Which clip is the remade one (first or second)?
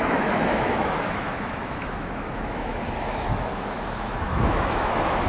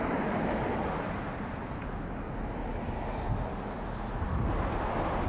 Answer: first